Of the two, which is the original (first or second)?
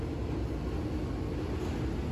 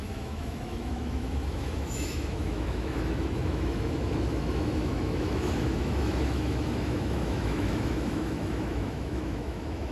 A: first